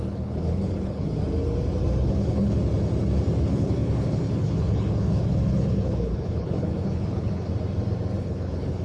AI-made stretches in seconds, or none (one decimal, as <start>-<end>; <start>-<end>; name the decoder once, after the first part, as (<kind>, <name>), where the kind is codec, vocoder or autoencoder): 0.0-1.2 (codec, HILCodec); 2.1-2.6; 3.4-7.5; 8.2-8.8

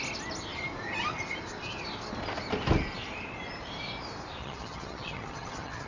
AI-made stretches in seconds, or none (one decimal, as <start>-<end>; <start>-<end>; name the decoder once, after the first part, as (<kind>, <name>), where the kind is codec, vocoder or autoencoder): 4.4-5.9 (vocoder, HiFi-GAN)

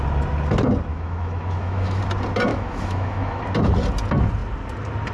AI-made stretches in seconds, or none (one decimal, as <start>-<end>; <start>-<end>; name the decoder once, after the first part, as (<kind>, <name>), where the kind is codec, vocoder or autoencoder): 0.9-2.0 (autoencoder, DAC-VAE); 2.5-3.4

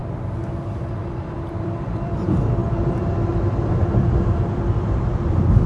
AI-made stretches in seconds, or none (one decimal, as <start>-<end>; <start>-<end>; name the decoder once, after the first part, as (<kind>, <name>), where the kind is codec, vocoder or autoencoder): 1.0-2.6 (vocoder, BigVGAN v2); 3.3-5.7

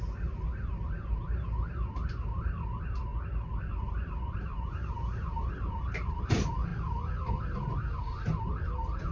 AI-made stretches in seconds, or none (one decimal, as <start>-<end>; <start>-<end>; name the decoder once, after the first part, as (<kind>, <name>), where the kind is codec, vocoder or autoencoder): 0.0-3.1 (vocoder, BigVGAN v2); 3.6-6.7; 7.4-9.1

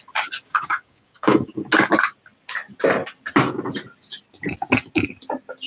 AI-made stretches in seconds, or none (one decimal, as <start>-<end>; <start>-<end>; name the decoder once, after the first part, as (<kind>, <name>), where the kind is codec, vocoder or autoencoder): 0.5-1.5 (codec, DAC)